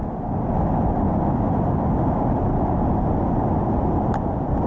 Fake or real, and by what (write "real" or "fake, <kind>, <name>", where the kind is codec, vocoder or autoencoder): real